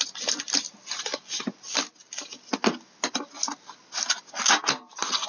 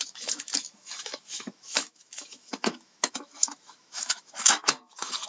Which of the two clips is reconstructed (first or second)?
second